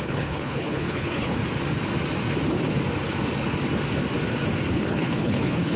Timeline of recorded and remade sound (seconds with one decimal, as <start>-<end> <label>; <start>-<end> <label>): 0.0-1.4 remade; 1.4-4.7 recorded; 4.7-5.8 remade